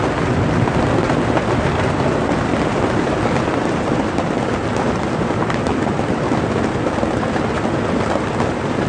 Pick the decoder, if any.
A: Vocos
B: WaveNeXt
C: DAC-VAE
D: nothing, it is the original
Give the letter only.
D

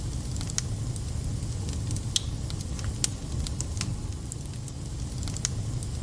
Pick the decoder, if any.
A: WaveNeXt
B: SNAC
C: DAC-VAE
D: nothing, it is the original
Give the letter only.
D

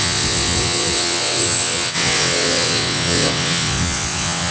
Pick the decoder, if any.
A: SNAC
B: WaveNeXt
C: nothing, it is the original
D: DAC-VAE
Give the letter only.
B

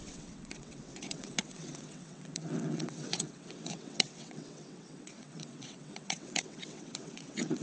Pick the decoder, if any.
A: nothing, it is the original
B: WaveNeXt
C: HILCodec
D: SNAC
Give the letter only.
B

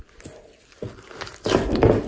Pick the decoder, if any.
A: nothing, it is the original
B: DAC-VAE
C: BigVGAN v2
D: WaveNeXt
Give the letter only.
A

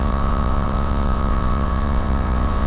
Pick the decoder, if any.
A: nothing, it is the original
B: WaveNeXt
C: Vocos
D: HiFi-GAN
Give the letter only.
B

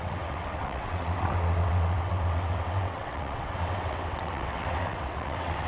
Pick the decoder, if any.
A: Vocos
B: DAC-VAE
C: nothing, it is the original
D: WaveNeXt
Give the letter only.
D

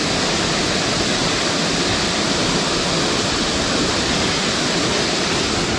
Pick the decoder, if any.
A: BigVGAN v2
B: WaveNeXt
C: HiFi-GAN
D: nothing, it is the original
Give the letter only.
D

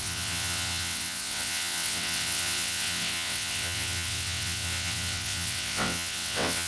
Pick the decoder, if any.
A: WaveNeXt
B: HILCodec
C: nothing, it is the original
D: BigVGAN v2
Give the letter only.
A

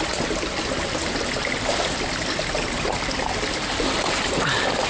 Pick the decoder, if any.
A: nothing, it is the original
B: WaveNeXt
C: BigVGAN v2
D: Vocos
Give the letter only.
A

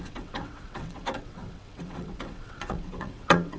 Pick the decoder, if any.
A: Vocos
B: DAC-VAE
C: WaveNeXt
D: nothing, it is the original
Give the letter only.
C